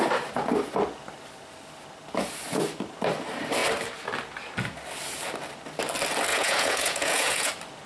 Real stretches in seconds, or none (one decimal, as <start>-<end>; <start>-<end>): 0.0-6.3; 7.5-7.9